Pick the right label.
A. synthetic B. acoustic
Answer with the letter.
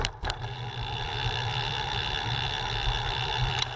A